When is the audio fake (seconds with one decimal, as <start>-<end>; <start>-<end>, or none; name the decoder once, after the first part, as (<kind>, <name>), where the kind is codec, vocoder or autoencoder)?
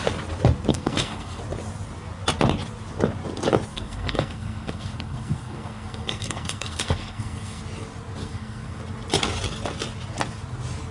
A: 0.7-1.4 (codec, SNAC); 3.7-7.6; 8.2-8.8